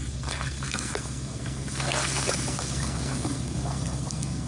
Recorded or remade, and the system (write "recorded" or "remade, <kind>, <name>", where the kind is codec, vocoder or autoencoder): remade, codec, SNAC